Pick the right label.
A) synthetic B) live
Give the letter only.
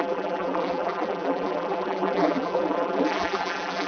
A